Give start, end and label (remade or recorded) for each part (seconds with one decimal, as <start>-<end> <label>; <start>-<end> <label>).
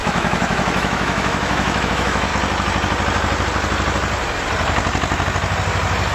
0.0-2.3 remade; 2.3-6.1 recorded